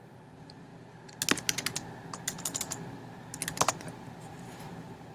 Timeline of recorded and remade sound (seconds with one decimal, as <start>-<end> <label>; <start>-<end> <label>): 0.0-0.7 remade; 0.7-3.7 recorded; 3.7-5.1 remade